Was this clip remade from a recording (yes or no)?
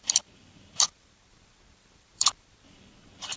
yes